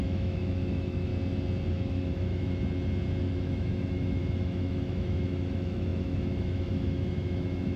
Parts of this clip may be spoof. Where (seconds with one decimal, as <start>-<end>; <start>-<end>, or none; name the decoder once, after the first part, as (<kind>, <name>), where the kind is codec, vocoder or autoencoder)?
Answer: 0.0-1.1 (autoencoder, DAC-VAE); 1.7-2.6; 3.2-7.8

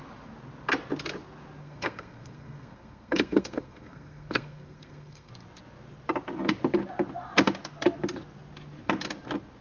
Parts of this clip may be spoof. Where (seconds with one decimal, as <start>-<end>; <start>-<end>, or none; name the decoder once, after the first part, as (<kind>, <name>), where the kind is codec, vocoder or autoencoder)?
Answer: 1.6-5.3 (codec, SNAC)